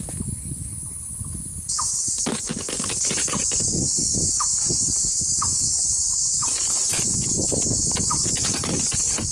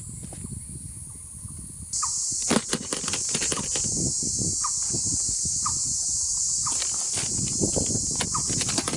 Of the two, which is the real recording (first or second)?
second